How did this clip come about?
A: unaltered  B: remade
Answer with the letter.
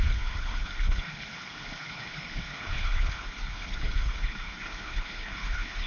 B